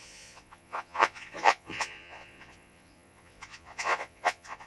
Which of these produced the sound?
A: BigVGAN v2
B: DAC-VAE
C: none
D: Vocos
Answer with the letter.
D